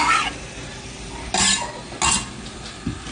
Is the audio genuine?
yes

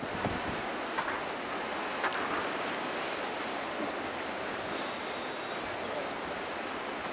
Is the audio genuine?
yes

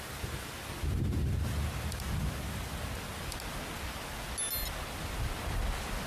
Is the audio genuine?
yes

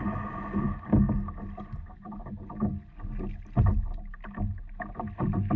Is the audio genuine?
yes